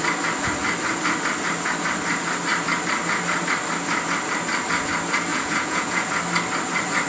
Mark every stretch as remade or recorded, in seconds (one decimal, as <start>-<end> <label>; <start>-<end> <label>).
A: 0.0-5.3 recorded; 5.3-6.1 remade; 6.1-7.1 recorded